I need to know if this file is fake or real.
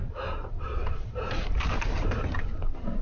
fake